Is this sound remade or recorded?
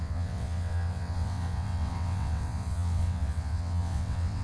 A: remade